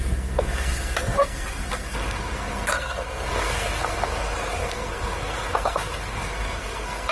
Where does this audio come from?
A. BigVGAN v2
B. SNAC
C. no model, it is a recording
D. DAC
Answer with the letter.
B